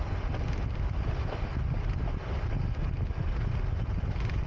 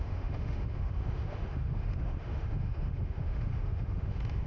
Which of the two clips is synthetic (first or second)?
second